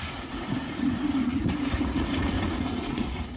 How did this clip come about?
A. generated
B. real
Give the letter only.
A